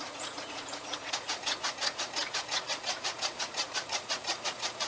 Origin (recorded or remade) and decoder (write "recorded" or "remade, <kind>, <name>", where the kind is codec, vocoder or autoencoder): remade, vocoder, Vocos